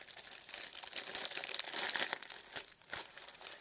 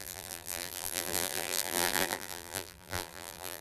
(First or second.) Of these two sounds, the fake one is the second